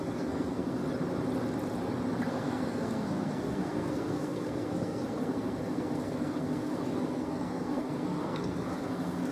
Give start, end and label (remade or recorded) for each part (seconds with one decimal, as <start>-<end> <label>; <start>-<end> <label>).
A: 0.0-0.8 remade; 0.8-2.3 recorded; 2.3-9.3 remade